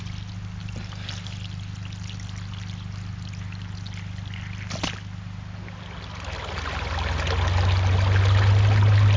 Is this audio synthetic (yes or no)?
no